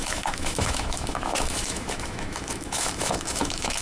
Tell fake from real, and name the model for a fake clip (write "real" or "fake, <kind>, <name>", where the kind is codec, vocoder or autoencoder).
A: fake, autoencoder, DAC-VAE